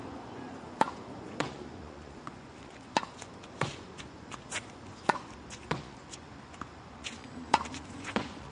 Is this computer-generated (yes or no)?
yes